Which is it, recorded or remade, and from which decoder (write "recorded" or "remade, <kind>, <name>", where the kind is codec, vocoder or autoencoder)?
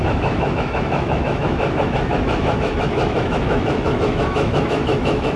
remade, autoencoder, DAC-VAE